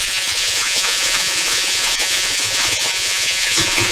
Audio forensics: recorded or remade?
remade